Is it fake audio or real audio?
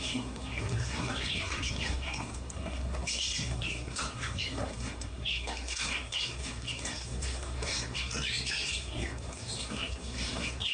fake